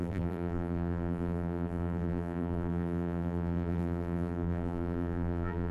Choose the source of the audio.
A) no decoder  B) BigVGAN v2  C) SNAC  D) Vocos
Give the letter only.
B